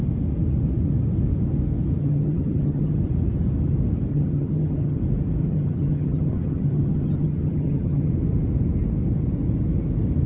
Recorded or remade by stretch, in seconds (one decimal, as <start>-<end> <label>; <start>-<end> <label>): 0.0-2.0 recorded; 2.0-3.0 remade; 3.0-4.1 recorded; 4.1-5.0 remade; 5.0-5.4 recorded; 5.4-8.1 remade; 8.1-10.3 recorded